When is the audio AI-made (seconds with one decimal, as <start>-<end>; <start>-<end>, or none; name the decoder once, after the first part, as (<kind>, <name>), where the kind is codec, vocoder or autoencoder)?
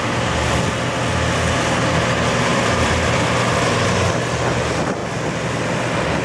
2.5-3.2 (vocoder, BigVGAN v2); 5.0-5.8